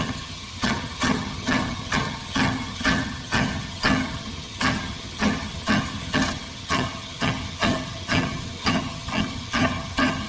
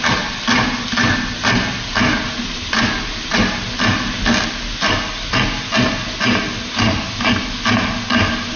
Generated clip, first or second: first